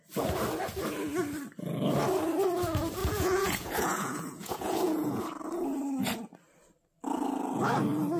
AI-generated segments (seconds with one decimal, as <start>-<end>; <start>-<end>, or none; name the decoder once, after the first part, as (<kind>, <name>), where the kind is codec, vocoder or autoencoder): 3.0-5.2 (vocoder, Vocos)